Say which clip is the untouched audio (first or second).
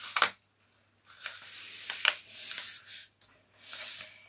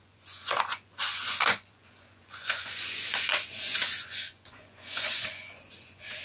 first